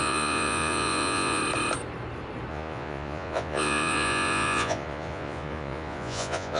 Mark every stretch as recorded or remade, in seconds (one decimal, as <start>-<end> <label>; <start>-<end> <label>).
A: 0.0-1.4 remade; 1.4-2.5 recorded; 2.5-6.6 remade